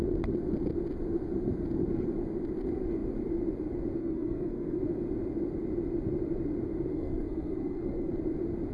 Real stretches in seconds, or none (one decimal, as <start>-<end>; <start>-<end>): 0.0-4.0; 4.8-6.9; 8.1-8.7